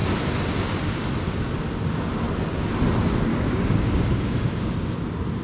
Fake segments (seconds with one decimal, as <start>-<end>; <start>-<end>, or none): 3.3-4.7